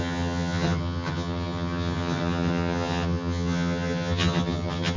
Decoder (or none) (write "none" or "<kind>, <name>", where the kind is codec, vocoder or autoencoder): vocoder, HiFi-GAN